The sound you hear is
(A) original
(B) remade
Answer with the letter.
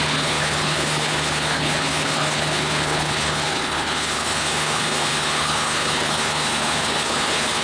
B